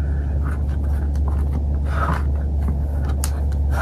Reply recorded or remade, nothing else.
recorded